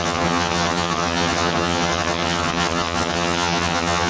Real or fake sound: fake